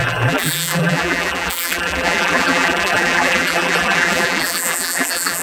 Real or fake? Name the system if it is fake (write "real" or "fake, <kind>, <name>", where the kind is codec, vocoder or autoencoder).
fake, vocoder, BigVGAN v2